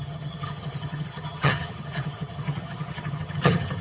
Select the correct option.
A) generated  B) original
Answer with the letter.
A